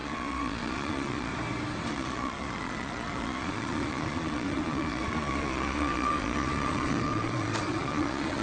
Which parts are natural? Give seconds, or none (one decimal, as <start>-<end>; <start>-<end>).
1.3-1.9

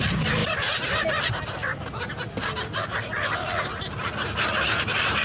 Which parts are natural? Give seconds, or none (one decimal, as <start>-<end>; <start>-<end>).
0.0-0.4; 1.1-5.2

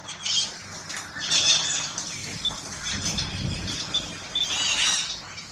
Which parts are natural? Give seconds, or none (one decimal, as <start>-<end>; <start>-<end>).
0.0-5.5

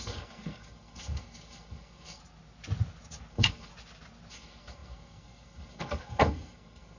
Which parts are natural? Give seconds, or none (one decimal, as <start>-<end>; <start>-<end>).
2.2-3.3; 3.7-4.3

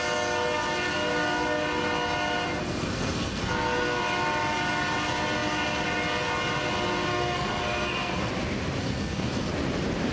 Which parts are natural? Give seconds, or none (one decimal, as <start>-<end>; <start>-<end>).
0.0-2.6; 4.0-7.1; 8.3-8.8; 9.5-10.1

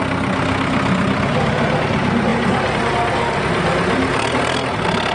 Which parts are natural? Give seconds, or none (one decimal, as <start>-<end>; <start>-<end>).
0.0-5.1

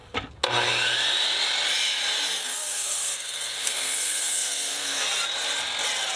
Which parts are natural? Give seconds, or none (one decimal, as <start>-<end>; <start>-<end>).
0.0-2.4; 5.0-6.2